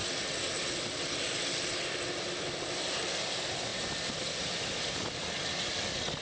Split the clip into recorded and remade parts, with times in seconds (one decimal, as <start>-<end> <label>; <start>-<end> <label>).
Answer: 0.0-6.2 recorded